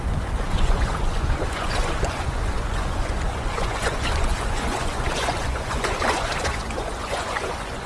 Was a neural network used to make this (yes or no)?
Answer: yes